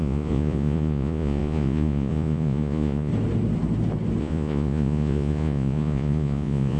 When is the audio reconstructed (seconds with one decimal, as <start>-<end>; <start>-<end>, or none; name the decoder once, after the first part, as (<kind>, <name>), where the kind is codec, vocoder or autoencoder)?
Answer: 0.0-3.1 (vocoder, Vocos); 4.2-6.8